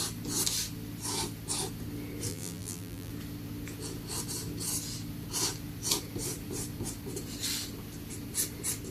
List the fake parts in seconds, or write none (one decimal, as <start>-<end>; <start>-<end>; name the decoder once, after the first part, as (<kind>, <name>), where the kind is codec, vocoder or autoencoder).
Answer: 2.3-3.1 (vocoder, BigVGAN v2)